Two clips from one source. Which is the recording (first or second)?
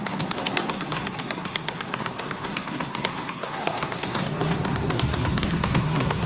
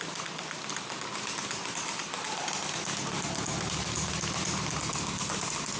second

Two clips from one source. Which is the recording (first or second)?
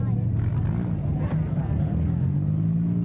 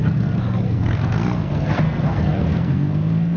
first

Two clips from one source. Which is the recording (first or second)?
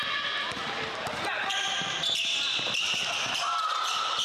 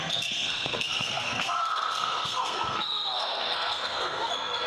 first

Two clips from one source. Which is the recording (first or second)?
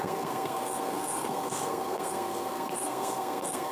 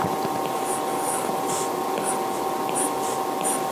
second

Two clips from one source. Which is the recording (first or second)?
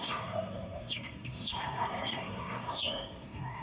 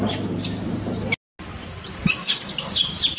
second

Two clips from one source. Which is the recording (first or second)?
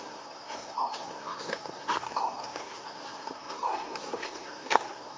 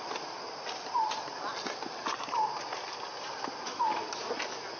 second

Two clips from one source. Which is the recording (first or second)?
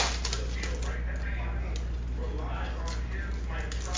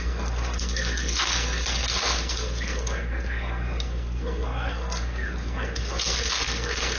first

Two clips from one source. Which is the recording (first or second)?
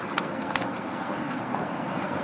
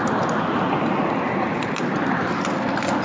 second